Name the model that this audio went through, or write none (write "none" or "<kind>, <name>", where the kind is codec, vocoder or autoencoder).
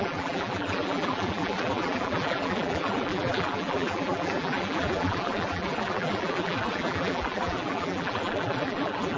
vocoder, BigVGAN v2